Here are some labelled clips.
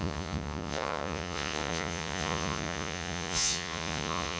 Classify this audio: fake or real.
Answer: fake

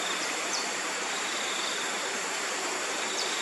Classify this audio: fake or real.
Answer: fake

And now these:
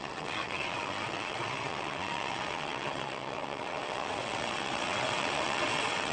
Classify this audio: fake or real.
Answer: fake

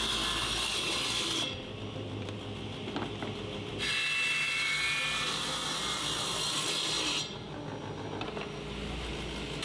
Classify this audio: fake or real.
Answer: real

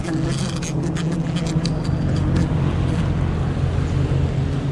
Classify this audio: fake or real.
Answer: real